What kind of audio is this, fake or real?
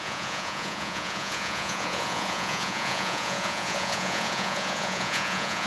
fake